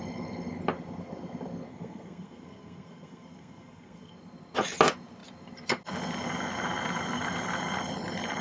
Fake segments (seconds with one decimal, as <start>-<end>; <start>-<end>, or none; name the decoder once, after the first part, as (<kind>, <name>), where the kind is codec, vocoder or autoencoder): 1.7-4.1 (codec, SNAC)